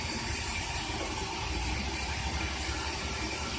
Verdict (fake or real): fake